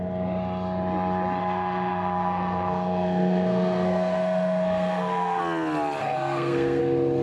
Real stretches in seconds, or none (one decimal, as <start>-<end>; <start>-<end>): 0.0-1.4; 5.4-6.0; 6.8-7.2